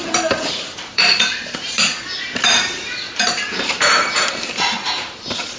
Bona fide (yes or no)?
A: no